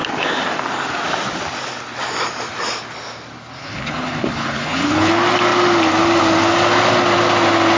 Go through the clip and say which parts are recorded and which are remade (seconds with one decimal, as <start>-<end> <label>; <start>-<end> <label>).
0.0-3.6 recorded; 3.6-5.1 remade; 5.1-7.8 recorded